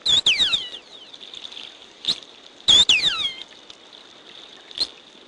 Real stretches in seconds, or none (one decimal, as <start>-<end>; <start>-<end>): 0.0-1.8; 3.0-5.3